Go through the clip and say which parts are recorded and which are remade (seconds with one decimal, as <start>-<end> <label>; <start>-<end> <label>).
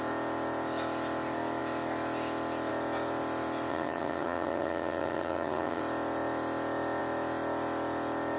0.0-3.7 recorded; 3.7-5.8 remade; 5.8-8.4 recorded